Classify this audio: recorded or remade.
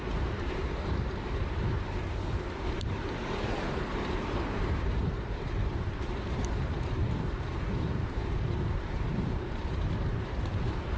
remade